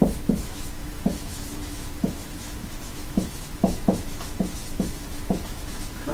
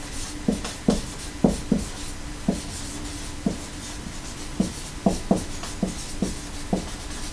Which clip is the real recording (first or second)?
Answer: second